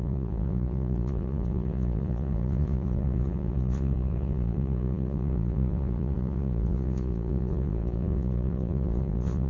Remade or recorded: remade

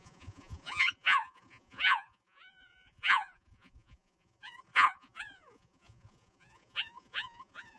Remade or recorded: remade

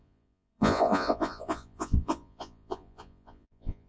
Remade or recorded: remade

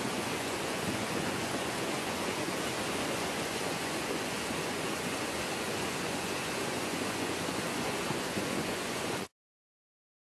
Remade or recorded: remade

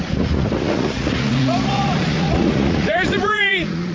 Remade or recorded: remade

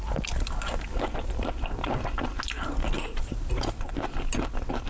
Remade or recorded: recorded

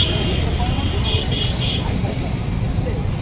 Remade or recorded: recorded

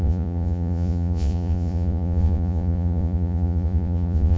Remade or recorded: remade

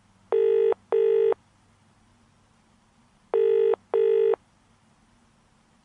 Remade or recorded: recorded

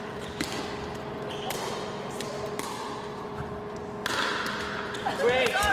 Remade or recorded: recorded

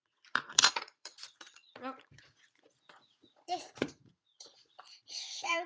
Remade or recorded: remade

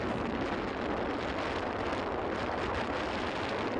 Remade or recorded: recorded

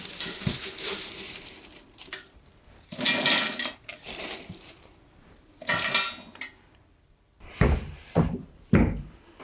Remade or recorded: recorded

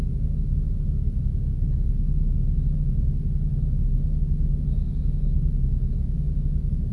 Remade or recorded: recorded